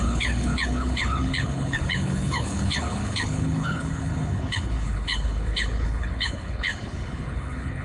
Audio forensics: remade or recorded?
remade